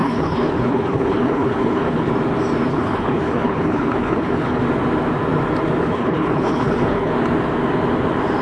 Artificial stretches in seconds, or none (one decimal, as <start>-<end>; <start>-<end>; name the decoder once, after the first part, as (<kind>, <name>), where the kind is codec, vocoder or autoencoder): 0.0-2.1 (codec, HILCodec); 2.7-4.6; 5.8-7.1